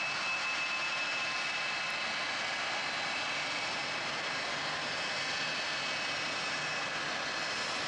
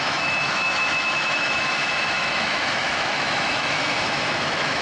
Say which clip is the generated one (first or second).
second